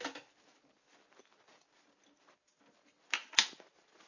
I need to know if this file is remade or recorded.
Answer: recorded